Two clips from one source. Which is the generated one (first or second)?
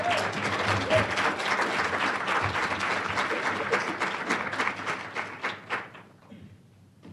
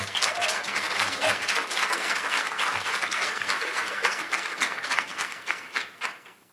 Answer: second